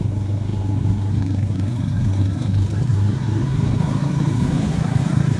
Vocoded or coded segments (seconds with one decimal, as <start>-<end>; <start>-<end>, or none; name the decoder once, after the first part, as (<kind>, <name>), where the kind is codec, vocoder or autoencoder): 0.0-5.4 (codec, SNAC)